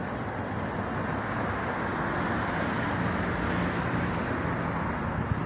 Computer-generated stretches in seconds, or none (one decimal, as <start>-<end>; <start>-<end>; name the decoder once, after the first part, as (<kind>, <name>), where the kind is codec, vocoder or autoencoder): none

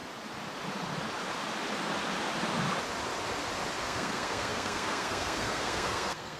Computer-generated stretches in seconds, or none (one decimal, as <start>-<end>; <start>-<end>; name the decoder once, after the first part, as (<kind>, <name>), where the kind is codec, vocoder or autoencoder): 3.8-6.4 (codec, SNAC)

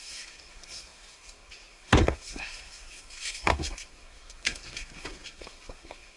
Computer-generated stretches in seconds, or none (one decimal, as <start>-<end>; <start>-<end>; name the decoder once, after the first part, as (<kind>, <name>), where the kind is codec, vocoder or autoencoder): 0.0-6.2 (codec, SNAC)

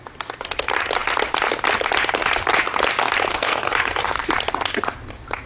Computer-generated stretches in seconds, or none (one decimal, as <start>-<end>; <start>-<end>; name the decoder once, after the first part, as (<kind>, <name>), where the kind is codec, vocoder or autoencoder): 3.3-4.3 (codec, SNAC)

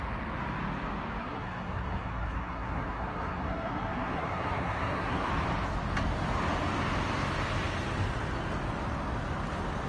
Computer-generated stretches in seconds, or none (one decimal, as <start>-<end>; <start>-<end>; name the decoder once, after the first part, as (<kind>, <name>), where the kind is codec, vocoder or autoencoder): 1.2-5.3 (codec, SNAC)